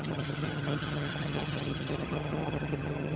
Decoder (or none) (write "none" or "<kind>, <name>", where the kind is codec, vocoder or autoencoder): vocoder, HiFi-GAN